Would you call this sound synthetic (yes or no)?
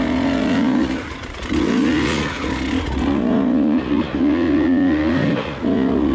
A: yes